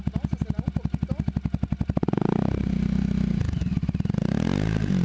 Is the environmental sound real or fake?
real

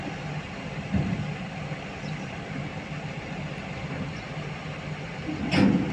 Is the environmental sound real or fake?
real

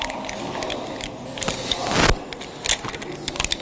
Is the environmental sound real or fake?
real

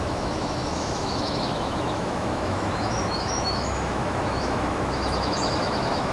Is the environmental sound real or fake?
fake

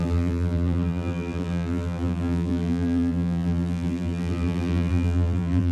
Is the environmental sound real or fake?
fake